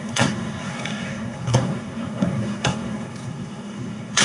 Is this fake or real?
fake